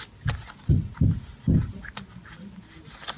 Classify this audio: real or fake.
real